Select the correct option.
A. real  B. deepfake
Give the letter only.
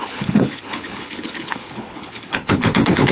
B